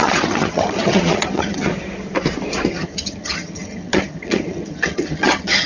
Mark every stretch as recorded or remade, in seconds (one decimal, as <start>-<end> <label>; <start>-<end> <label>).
0.0-1.7 remade; 1.7-2.7 recorded; 2.7-5.7 remade